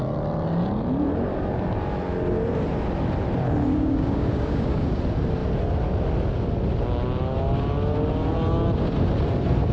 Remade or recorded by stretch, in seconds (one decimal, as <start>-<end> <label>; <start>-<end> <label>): 0.0-3.7 recorded; 3.7-5.0 remade; 5.0-9.7 recorded